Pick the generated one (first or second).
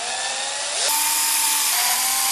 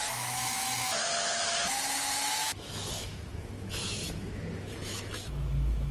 second